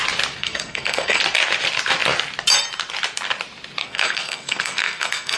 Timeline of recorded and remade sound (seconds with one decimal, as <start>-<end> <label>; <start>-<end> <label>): 0.0-0.4 recorded; 0.4-1.2 remade; 1.2-3.8 recorded; 3.8-5.4 remade